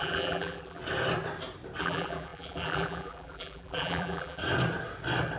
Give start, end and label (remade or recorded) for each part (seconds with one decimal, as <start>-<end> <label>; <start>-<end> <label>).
0.0-0.8 remade; 0.8-1.8 recorded; 1.8-4.4 remade; 4.4-5.4 recorded